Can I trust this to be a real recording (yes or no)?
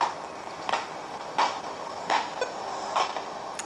yes